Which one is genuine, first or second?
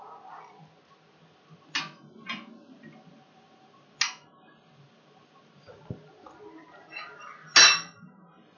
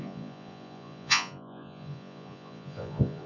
first